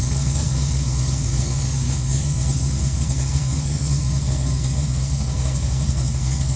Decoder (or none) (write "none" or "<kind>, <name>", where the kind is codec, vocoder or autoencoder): codec, SNAC